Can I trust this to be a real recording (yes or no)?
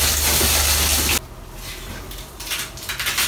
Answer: yes